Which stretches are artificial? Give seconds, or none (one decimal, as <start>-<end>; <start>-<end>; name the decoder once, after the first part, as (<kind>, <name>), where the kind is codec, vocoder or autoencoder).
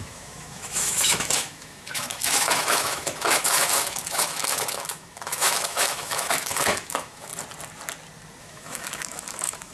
0.0-7.3 (autoencoder, DAC-VAE); 8.4-9.7